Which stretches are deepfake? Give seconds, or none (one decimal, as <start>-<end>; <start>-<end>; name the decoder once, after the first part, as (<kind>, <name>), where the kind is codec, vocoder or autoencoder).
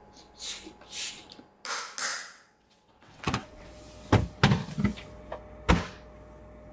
2.1-3.7 (vocoder, WaveNeXt)